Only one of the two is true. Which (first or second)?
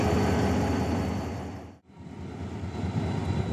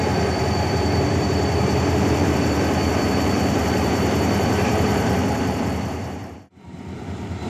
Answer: first